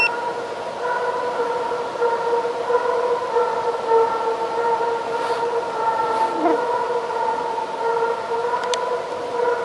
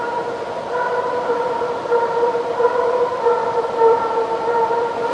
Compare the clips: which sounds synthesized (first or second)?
second